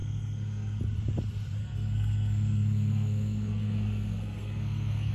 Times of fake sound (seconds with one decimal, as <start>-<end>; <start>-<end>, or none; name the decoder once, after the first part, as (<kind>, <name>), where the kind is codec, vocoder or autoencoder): 0.0-0.8 (codec, SNAC); 1.6-5.1